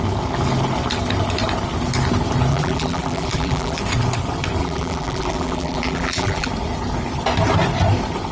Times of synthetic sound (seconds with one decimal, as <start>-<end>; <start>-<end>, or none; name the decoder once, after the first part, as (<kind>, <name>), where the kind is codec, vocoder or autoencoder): 2.5-3.8 (vocoder, BigVGAN v2); 4.6-6.5